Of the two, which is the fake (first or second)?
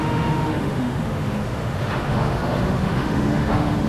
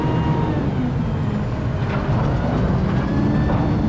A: first